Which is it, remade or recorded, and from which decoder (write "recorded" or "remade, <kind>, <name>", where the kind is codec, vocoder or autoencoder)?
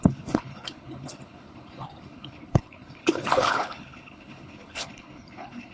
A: remade, codec, HILCodec